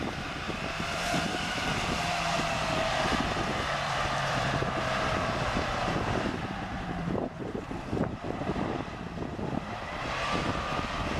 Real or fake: fake